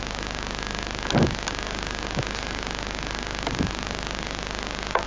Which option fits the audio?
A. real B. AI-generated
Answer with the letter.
A